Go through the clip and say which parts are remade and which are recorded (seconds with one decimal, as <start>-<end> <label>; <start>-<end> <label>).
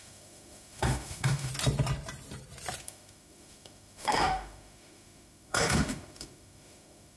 0.0-1.5 remade; 1.5-2.8 recorded; 2.8-7.2 remade